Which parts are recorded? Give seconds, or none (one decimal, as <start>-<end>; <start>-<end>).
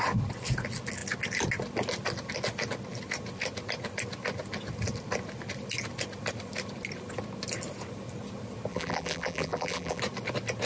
0.0-8.7; 10.0-10.7